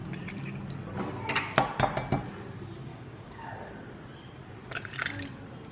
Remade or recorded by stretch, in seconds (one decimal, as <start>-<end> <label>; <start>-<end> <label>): 0.0-2.9 recorded; 2.9-3.5 remade; 3.5-5.7 recorded

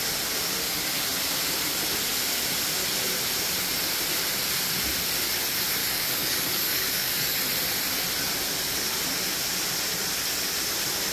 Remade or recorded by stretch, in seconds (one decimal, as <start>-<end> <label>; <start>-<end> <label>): 0.0-5.8 recorded; 5.8-7.4 remade; 7.4-11.1 recorded

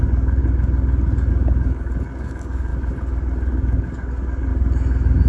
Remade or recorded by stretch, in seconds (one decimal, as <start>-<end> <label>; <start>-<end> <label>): 0.0-0.4 remade; 0.4-1.3 recorded; 1.3-2.7 remade; 2.7-3.5 recorded; 3.5-4.5 remade; 4.5-5.3 recorded

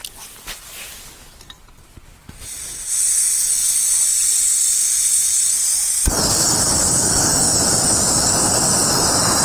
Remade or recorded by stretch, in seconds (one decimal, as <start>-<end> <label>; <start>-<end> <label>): 0.0-6.7 recorded; 6.7-7.4 remade; 7.4-9.4 recorded